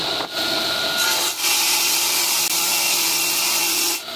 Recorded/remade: recorded